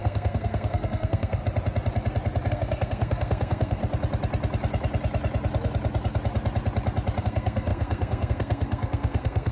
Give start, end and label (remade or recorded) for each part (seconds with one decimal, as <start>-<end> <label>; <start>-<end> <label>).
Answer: 0.0-1.4 remade; 1.4-2.5 recorded; 2.5-3.8 remade; 3.8-7.2 recorded; 7.2-9.5 remade